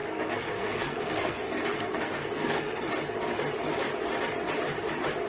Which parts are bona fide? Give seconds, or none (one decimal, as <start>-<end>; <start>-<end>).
2.9-5.3